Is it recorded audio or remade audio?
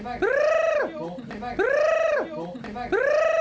recorded